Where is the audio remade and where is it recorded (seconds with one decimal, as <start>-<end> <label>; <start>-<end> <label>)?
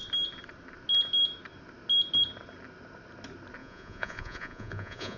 0.0-3.6 recorded; 3.6-5.2 remade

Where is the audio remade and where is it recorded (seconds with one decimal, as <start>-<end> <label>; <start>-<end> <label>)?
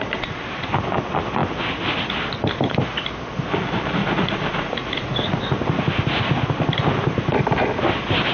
0.0-4.0 recorded; 4.0-5.4 remade; 5.4-8.3 recorded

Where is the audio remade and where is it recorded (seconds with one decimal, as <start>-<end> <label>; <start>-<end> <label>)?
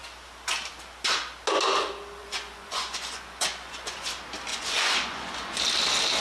0.0-2.2 recorded; 2.2-4.1 remade; 4.1-4.5 recorded; 4.5-5.6 remade; 5.6-6.2 recorded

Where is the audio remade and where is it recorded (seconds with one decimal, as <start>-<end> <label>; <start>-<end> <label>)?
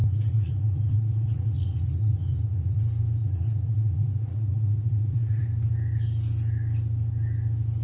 0.0-2.8 remade; 2.8-3.2 recorded; 3.2-5.4 remade; 5.4-7.8 recorded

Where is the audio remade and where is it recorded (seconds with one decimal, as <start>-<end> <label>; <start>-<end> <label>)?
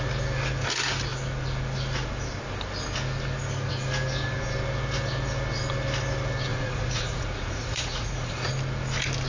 0.0-6.5 recorded; 6.5-8.5 remade; 8.5-9.3 recorded